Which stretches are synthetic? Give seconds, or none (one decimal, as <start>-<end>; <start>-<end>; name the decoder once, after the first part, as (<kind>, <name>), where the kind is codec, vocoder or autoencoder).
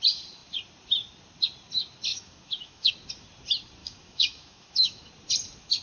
2.1-2.9 (autoencoder, DAC-VAE); 3.8-5.1